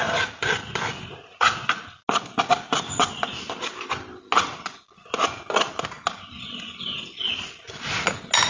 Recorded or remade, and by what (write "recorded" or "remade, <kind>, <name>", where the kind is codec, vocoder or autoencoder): recorded